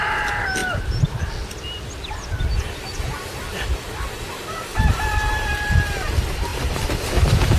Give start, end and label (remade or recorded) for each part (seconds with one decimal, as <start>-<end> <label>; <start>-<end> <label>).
0.0-4.7 recorded; 4.7-5.7 remade; 5.7-6.5 recorded; 6.5-7.6 remade